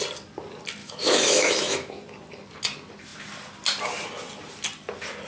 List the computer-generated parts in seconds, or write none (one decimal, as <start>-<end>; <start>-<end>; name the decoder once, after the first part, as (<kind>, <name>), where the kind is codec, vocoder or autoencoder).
0.8-2.0 (autoencoder, DAC-VAE)